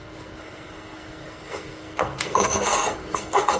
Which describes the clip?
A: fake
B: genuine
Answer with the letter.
A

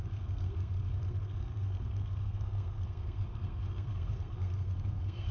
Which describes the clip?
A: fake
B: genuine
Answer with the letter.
A